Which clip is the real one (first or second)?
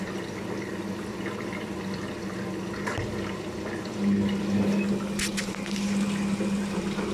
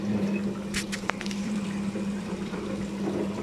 first